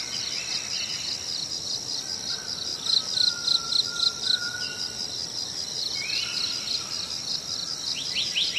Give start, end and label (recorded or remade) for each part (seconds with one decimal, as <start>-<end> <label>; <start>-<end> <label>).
0.0-8.6 recorded